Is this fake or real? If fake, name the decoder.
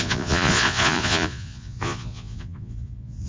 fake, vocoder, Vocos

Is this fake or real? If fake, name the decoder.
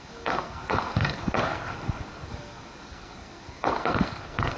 fake, codec, SNAC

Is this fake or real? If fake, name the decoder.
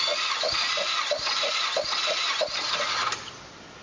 real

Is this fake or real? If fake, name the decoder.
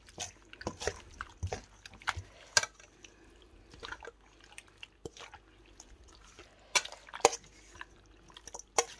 real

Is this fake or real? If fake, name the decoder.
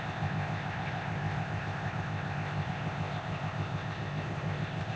fake, codec, ZipCodec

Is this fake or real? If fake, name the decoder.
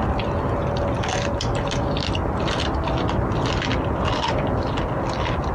real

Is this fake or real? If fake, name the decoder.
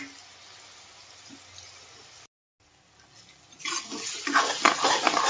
real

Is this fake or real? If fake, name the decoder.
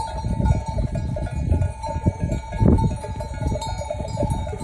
real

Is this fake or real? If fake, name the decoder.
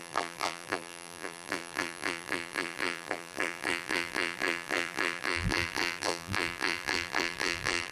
fake, vocoder, BigVGAN v2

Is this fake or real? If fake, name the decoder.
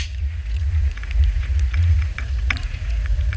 fake, vocoder, Vocos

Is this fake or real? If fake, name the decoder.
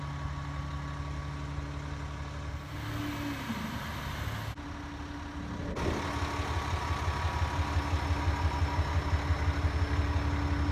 real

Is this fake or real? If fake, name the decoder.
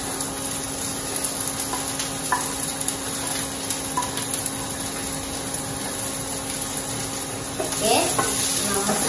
real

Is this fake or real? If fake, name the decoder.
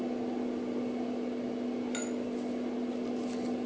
real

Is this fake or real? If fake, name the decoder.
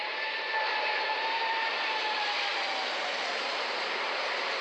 fake, vocoder, BigVGAN v2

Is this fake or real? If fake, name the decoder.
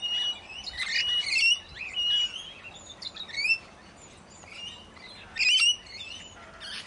real